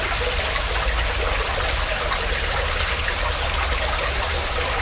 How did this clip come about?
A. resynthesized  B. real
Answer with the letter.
B